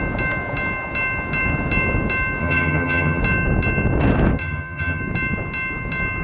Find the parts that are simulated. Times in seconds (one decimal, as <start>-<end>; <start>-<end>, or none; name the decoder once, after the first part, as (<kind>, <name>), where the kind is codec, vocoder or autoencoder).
2.4-3.2 (vocoder, HiFi-GAN); 4.4-5.0